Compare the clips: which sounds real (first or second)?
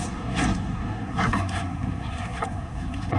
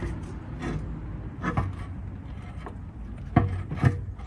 second